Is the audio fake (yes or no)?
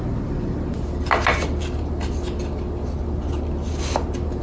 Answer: no